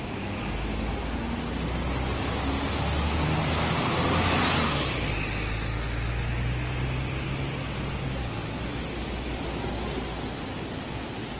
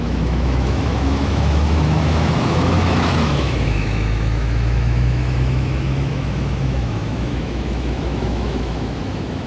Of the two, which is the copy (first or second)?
second